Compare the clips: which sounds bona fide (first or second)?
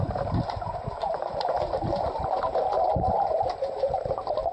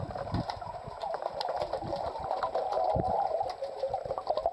second